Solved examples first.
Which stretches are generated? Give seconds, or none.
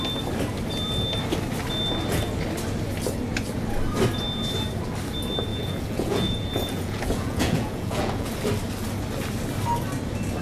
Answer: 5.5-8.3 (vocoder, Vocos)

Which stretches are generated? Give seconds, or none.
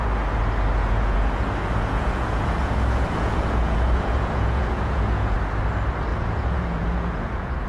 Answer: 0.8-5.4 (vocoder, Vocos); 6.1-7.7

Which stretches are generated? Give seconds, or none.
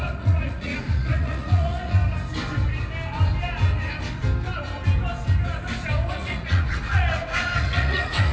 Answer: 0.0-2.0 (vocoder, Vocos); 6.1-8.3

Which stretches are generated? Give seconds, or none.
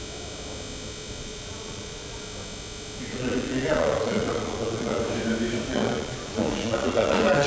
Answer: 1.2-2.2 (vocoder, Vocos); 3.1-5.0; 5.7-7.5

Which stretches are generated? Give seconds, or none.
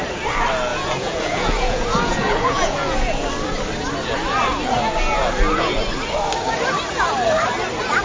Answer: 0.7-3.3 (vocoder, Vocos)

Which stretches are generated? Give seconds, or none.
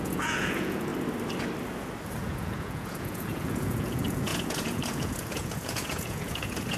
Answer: 0.0-0.9 (vocoder, Vocos); 2.2-6.8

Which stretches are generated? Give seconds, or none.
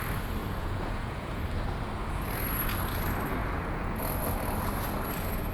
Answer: 0.4-1.4 (vocoder, Vocos); 3.4-4.0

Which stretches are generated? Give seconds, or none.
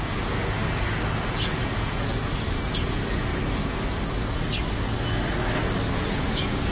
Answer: 0.0-3.3 (vocoder, Vocos); 6.0-6.7